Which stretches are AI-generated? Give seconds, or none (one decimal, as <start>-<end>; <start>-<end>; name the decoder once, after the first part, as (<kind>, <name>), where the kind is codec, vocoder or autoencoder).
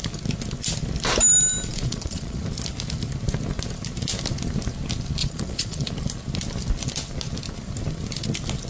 1.7-2.4 (vocoder, Vocos); 5.2-5.9